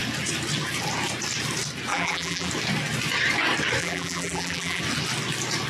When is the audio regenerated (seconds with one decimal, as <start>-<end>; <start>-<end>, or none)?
1.9-2.5; 3.8-4.8